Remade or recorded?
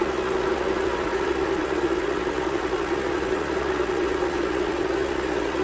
remade